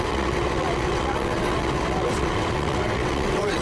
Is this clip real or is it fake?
fake